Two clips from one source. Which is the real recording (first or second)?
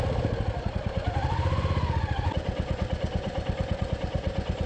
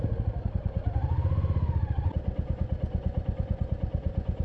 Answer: second